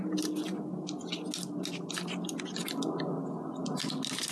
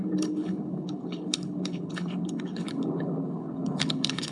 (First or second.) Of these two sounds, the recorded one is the first